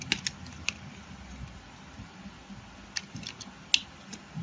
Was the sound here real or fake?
real